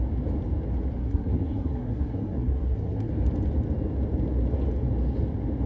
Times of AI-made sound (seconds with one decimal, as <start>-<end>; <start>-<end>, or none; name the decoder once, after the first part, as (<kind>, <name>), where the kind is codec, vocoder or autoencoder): 1.0-3.1 (codec, SNAC)